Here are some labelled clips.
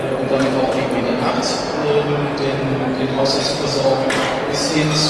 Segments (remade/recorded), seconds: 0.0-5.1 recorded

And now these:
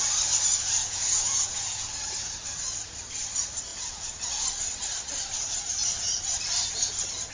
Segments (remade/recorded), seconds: 0.0-0.8 recorded; 0.8-1.9 remade; 1.9-3.7 recorded; 3.7-4.3 remade; 4.3-7.3 recorded

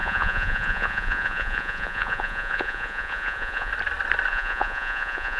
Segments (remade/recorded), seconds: 0.0-3.7 remade; 3.7-4.3 recorded; 4.3-5.4 remade

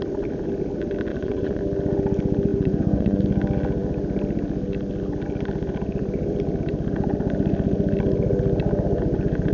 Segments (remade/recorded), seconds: 0.0-1.1 recorded; 1.1-1.6 remade; 1.6-2.5 recorded; 2.5-3.2 remade; 3.2-9.5 recorded

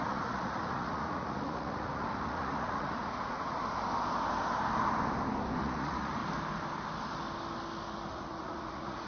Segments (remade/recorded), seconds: 0.0-3.6 remade; 3.6-5.6 recorded; 5.6-6.2 remade; 6.2-8.1 recorded; 8.1-9.1 remade

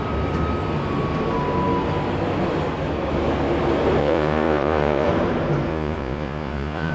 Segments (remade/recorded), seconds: 0.0-4.0 recorded; 4.0-5.1 remade; 5.1-5.7 recorded; 5.7-6.9 remade

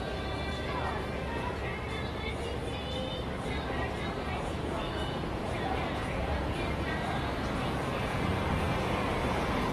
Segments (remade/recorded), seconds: 0.0-1.6 remade; 1.6-4.0 recorded; 4.0-9.7 remade